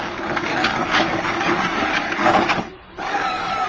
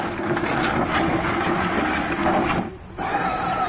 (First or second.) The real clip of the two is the second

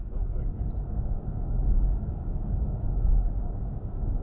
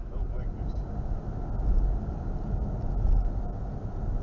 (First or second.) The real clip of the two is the second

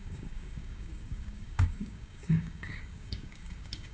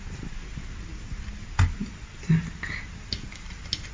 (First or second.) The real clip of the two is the second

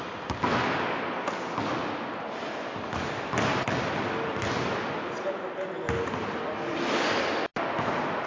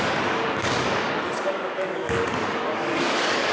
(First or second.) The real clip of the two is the first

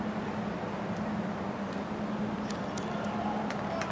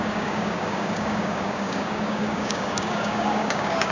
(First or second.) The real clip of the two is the first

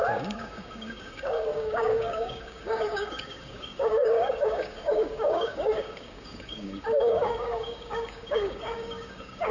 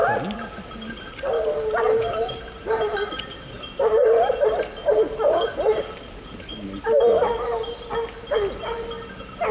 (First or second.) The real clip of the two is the second